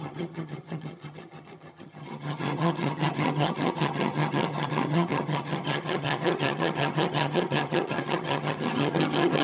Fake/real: fake